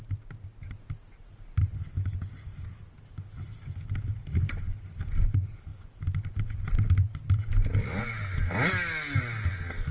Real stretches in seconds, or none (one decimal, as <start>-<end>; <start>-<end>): 0.0-9.9